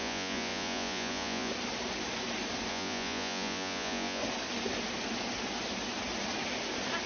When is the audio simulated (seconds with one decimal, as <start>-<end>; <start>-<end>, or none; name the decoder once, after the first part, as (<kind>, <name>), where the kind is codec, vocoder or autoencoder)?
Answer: 0.0-1.5 (vocoder, Vocos); 2.7-4.2